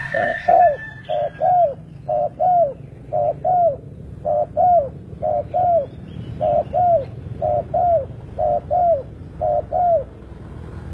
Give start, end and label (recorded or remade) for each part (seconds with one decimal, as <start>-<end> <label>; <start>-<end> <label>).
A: 0.0-0.6 remade; 0.6-10.9 recorded